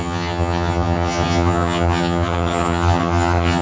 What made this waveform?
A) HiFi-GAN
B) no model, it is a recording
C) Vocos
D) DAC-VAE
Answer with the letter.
A